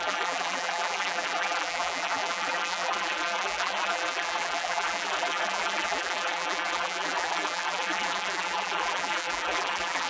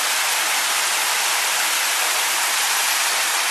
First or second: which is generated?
first